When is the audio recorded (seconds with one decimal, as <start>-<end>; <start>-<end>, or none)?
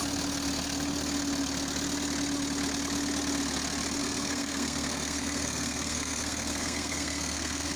0.0-4.0